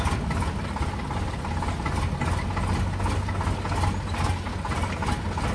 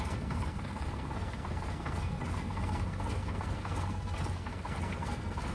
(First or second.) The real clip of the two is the first